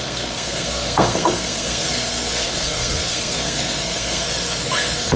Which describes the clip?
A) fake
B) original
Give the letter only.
A